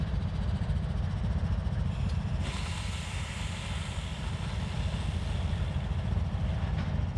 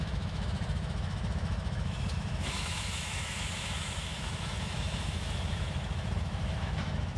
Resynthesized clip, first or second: second